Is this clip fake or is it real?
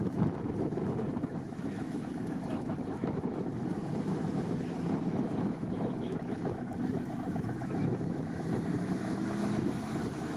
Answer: fake